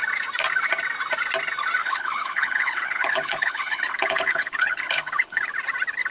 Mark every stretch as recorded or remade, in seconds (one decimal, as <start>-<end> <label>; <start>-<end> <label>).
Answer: 0.0-1.8 recorded; 1.8-5.5 remade; 5.5-6.1 recorded